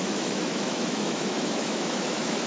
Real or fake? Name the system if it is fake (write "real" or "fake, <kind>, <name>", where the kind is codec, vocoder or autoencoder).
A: fake, autoencoder, DAC-VAE